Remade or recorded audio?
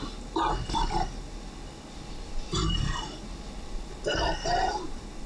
recorded